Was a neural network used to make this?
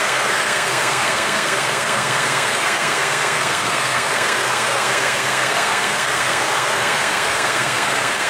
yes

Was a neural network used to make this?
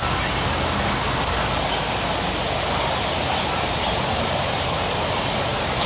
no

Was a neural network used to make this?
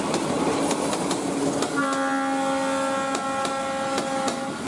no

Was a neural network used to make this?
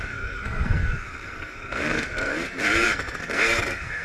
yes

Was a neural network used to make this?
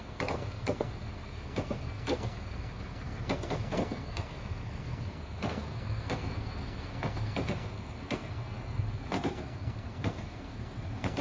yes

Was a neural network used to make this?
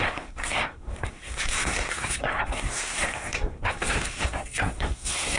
yes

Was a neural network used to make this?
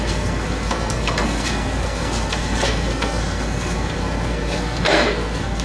yes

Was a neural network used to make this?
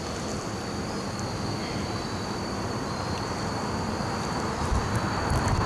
no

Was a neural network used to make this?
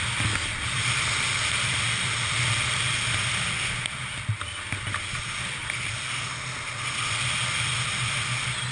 no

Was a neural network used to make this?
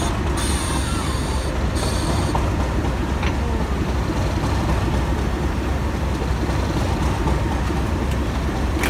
no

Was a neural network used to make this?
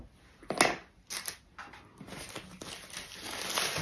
no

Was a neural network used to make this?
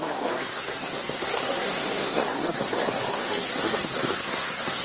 yes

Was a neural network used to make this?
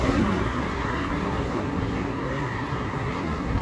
yes